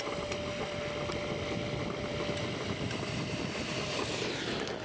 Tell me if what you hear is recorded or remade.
recorded